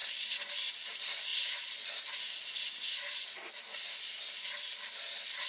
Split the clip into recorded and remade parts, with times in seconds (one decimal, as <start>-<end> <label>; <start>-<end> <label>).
0.0-5.5 recorded

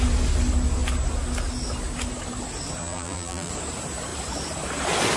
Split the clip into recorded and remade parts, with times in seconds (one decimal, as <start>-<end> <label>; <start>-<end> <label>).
0.0-2.8 recorded; 2.8-3.5 remade; 3.5-5.2 recorded